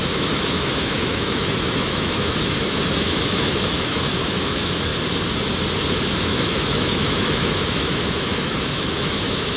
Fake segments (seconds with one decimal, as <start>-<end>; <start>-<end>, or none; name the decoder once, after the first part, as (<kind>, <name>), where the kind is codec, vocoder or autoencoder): 0.0-4.9 (autoencoder, DAC-VAE); 6.2-9.6